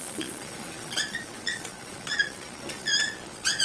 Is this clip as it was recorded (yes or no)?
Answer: no